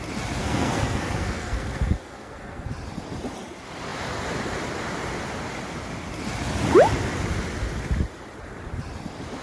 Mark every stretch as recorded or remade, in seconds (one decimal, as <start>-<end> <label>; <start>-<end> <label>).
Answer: 0.0-0.4 recorded; 0.4-2.7 remade; 2.7-9.4 recorded

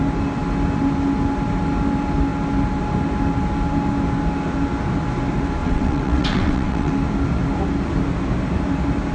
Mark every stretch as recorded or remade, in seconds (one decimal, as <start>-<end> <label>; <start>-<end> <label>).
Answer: 0.0-5.6 recorded; 5.6-6.9 remade; 6.9-9.1 recorded

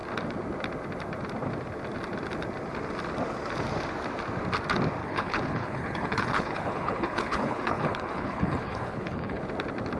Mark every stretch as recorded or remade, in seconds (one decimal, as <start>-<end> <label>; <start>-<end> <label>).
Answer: 0.0-5.0 recorded; 5.0-9.4 remade; 9.4-10.0 recorded

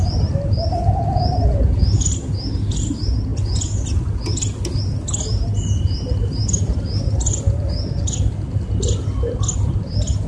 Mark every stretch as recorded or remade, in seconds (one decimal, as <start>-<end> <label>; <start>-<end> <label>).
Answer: 0.0-10.3 recorded

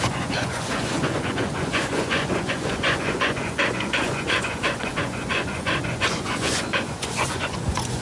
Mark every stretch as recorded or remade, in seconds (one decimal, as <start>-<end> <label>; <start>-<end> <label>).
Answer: 0.0-8.0 remade

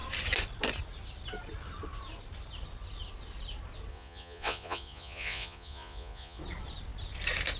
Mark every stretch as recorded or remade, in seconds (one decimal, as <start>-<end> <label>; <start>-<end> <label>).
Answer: 0.0-3.9 recorded; 3.9-6.4 remade; 6.4-7.6 recorded

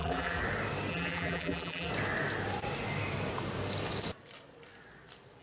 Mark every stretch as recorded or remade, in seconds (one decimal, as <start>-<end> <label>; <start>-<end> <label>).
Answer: 0.0-0.4 remade; 0.4-0.9 recorded; 0.9-1.9 remade; 1.9-5.4 recorded